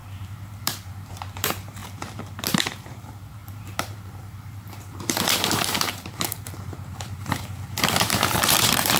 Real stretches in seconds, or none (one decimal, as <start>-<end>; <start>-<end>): none